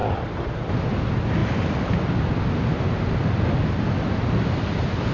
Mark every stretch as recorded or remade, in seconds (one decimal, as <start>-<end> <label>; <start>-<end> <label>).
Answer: 0.0-5.1 recorded